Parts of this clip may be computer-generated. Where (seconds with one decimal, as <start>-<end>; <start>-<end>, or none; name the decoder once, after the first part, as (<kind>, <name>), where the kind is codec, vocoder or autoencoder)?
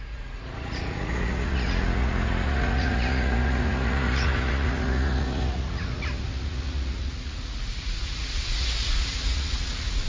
0.0-10.1 (vocoder, Vocos)